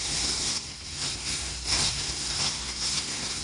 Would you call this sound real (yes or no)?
no